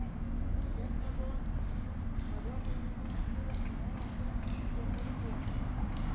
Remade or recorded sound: recorded